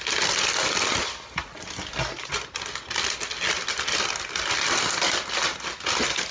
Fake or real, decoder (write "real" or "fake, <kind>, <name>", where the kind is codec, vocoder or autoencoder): real